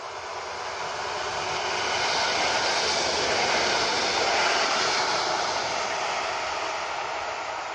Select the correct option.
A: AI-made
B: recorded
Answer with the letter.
B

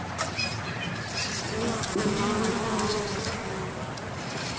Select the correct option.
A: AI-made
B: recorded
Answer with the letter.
B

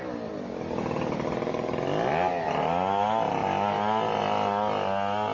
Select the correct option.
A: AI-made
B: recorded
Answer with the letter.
B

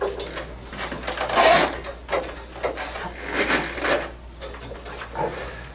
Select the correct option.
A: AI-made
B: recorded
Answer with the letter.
B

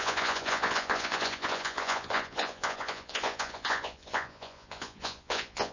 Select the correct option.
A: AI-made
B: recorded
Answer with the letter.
A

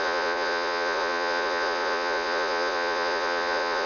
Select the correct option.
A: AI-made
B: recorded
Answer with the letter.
A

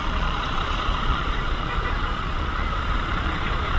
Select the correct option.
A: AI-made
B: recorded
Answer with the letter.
A